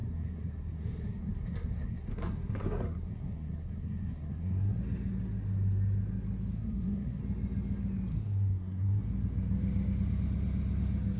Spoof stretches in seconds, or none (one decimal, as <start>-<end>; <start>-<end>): 0.0-4.8; 6.5-7.2; 8.1-9.0